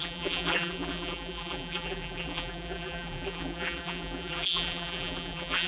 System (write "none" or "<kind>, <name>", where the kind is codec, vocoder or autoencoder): vocoder, BigVGAN v2